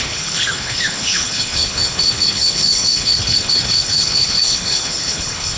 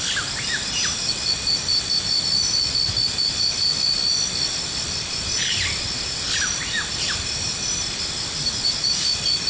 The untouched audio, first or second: second